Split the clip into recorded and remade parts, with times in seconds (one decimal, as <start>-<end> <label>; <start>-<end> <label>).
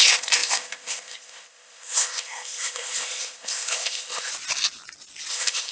0.0-4.3 remade; 4.3-5.3 recorded; 5.3-5.7 remade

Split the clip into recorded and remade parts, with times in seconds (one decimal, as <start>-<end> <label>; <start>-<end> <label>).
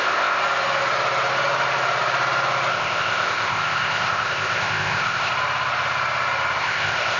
0.0-0.4 remade; 0.4-2.7 recorded; 2.7-5.3 remade; 5.3-6.6 recorded; 6.6-7.2 remade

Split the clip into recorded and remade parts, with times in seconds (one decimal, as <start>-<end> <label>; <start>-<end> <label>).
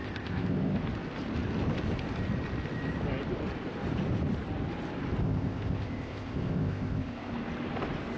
0.0-0.8 remade; 0.8-5.2 recorded; 5.2-7.3 remade; 7.3-8.2 recorded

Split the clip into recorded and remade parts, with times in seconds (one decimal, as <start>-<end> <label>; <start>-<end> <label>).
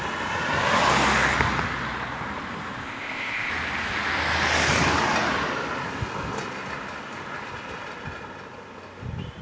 0.0-2.8 recorded; 2.8-3.5 remade; 3.5-9.4 recorded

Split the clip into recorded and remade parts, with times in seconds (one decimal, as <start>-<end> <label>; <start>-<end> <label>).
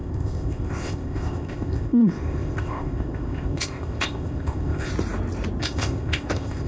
0.0-4.9 remade; 4.9-5.6 recorded; 5.6-6.7 remade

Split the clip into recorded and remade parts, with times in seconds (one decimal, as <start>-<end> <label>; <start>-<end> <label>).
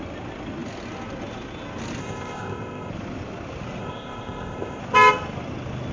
0.0-2.0 recorded; 2.0-2.9 remade; 2.9-3.8 recorded; 3.8-4.8 remade; 4.8-5.9 recorded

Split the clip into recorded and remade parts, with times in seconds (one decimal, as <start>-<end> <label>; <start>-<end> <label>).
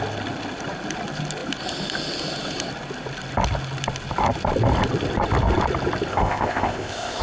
0.0-6.1 recorded; 6.1-7.2 remade